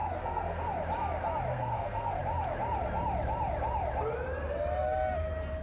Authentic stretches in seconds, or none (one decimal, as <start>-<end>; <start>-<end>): 0.6-1.5; 2.2-5.6